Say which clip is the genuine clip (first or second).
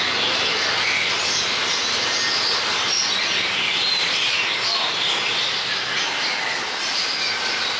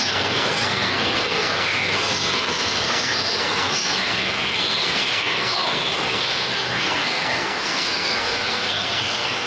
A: first